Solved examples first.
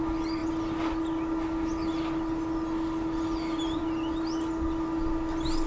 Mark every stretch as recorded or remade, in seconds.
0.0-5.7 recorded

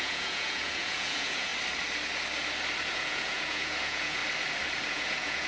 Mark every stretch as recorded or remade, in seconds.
0.0-1.5 remade; 1.5-2.9 recorded; 2.9-4.2 remade; 4.2-4.9 recorded; 4.9-5.5 remade

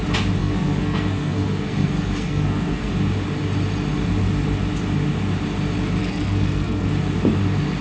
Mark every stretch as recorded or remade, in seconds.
0.0-0.4 recorded; 0.4-2.9 remade; 2.9-6.0 recorded; 6.0-6.9 remade; 6.9-7.8 recorded

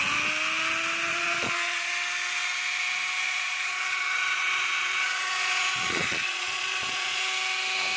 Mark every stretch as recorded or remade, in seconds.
0.0-1.1 recorded; 1.1-1.9 remade; 1.9-3.2 recorded; 3.2-7.2 remade; 7.2-8.0 recorded

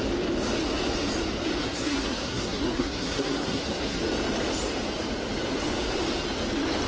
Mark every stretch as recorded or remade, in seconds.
0.0-1.6 recorded; 1.6-4.0 remade; 4.0-6.9 recorded